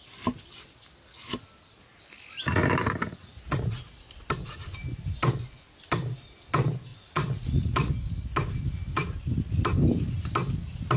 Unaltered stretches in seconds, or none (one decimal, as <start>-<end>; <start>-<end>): 0.0-3.2; 4.0-6.9; 7.9-11.0